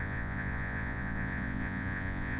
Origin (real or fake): fake